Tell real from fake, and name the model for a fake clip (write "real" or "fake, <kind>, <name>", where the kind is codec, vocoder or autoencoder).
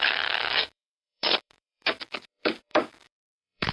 fake, codec, DAC